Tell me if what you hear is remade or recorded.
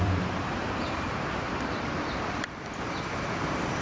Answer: remade